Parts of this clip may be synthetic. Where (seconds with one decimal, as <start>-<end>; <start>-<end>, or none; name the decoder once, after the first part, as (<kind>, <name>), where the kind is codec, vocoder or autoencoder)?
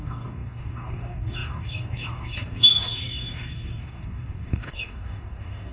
0.0-5.7 (codec, DAC)